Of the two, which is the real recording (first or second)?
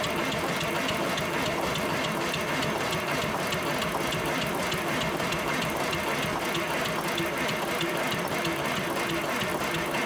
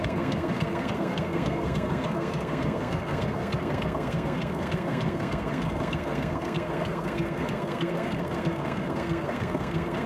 first